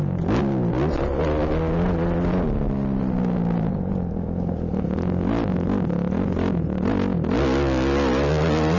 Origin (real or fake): real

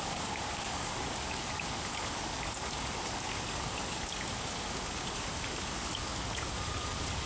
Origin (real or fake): fake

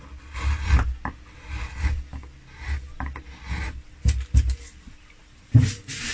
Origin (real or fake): real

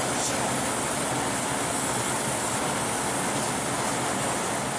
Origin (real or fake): real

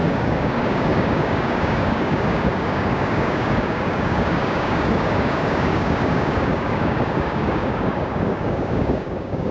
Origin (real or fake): fake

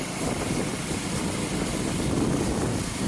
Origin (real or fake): real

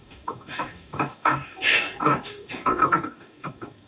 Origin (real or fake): fake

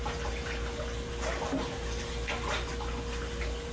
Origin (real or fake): real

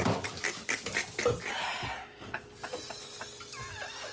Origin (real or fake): real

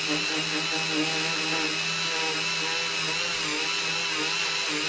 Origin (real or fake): real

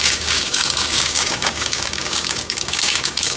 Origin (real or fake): fake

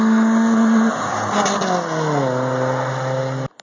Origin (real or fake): real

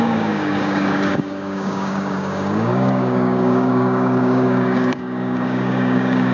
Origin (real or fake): fake